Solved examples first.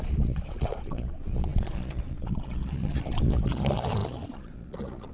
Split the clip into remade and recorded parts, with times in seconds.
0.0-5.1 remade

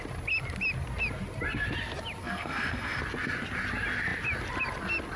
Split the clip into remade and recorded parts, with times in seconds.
0.0-2.2 recorded; 2.2-3.0 remade; 3.0-5.2 recorded

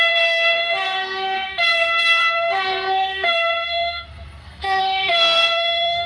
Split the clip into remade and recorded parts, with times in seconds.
0.0-6.1 remade

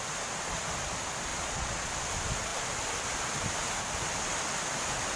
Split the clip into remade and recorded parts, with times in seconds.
0.0-1.3 recorded; 1.3-1.9 remade; 1.9-5.2 recorded

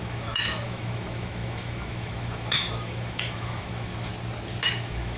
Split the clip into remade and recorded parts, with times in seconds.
0.0-4.1 remade; 4.1-4.7 recorded; 4.7-5.2 remade